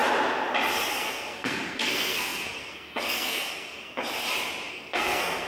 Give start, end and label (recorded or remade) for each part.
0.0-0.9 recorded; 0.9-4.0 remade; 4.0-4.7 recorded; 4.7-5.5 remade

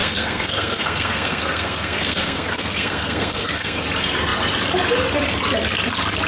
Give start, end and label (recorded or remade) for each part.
0.0-3.8 remade; 3.8-6.3 recorded

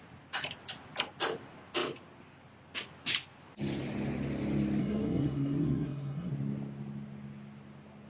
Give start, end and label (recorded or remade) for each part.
0.0-4.8 recorded; 4.8-6.3 remade; 6.3-8.1 recorded

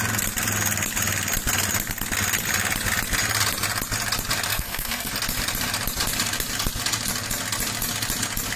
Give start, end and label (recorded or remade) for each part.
0.0-4.5 recorded; 4.5-5.1 remade; 5.1-8.6 recorded